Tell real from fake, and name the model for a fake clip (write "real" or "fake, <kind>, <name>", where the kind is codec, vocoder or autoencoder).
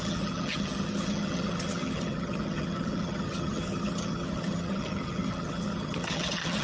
fake, vocoder, HiFi-GAN